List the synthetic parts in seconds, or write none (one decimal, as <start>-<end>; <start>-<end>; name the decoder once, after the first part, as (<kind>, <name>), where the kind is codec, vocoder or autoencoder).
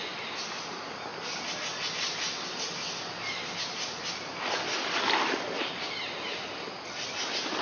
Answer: none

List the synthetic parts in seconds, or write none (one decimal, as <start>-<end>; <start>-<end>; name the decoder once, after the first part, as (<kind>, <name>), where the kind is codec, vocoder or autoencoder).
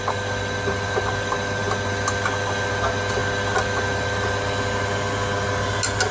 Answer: none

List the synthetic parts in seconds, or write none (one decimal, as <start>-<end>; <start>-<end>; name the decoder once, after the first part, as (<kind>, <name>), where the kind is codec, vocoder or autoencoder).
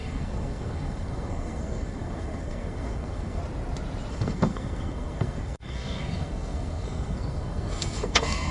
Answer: 0.0-3.4 (codec, SNAC); 4.1-8.5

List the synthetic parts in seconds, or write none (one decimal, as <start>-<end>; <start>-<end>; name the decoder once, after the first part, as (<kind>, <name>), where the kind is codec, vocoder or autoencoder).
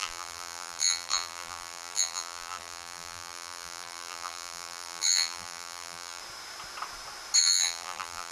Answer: 0.0-6.2 (vocoder, BigVGAN v2); 7.4-8.3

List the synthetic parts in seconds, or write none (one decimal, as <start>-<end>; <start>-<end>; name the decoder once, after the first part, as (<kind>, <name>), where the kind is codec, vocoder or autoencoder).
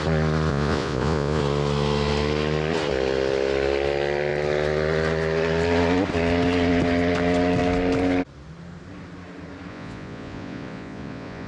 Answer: 0.5-1.4 (vocoder, Vocos); 9.7-11.5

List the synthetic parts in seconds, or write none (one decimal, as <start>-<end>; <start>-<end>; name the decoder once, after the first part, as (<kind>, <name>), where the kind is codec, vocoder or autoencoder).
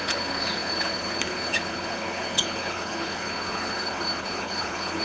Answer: 0.0-5.0 (codec, HILCodec)